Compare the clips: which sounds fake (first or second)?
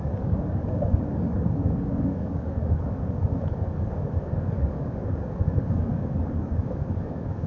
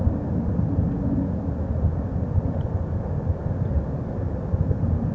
first